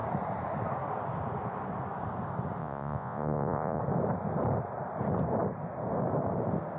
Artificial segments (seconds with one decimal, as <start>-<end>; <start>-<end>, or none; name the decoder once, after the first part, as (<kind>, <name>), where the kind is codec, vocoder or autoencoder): 2.6-3.8 (vocoder, Vocos)